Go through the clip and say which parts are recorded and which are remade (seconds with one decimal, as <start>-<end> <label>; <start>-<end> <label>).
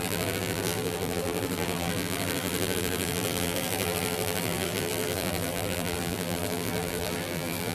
0.0-7.7 remade